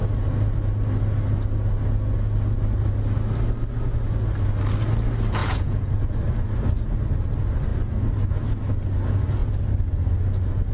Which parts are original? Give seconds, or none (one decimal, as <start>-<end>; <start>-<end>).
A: 0.0-5.4; 6.0-10.7